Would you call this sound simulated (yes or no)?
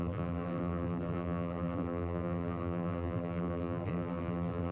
yes